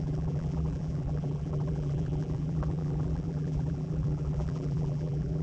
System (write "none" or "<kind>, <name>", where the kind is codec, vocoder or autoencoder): vocoder, BigVGAN v2